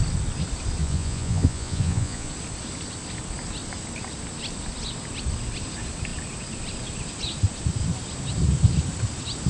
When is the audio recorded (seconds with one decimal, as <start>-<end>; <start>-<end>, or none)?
0.0-0.8; 2.3-9.5